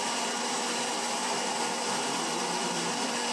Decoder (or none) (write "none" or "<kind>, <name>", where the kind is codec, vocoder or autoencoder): none